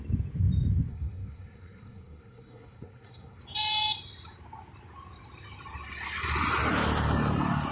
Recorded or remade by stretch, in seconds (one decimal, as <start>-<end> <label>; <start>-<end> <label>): 0.0-0.9 recorded; 0.9-3.4 remade; 3.4-7.7 recorded